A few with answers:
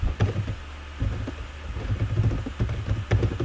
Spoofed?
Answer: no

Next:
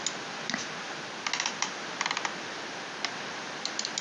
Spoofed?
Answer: no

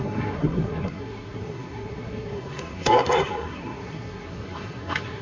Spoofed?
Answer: yes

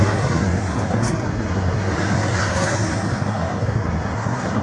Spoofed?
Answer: yes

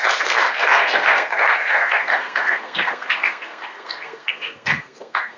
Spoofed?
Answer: yes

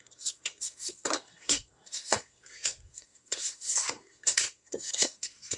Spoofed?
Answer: yes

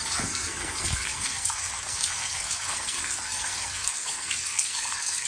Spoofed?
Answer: yes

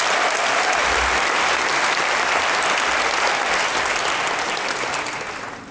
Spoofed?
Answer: no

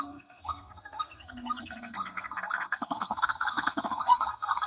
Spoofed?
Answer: yes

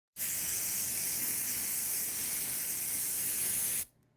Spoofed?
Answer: yes